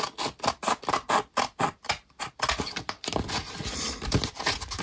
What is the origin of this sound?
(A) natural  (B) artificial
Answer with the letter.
A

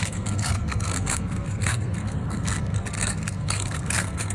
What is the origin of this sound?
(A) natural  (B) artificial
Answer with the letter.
B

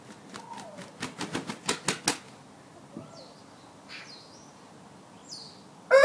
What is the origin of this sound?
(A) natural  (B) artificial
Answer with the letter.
A